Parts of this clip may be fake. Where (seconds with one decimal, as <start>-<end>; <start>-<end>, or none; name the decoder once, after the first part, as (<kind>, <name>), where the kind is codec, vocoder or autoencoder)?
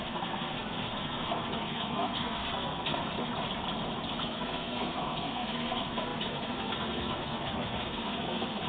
0.0-3.0 (codec, SNAC); 4.2-8.7